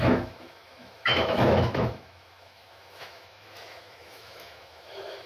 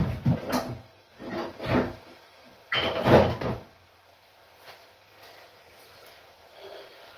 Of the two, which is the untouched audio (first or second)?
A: second